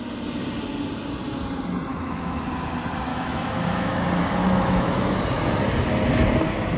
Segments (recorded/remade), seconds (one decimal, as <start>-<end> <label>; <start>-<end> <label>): 0.0-1.9 recorded; 1.9-2.4 remade; 2.4-3.1 recorded; 3.1-4.0 remade; 4.0-4.4 recorded; 4.4-5.1 remade; 5.1-6.8 recorded